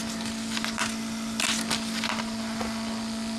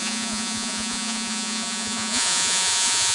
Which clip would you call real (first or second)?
first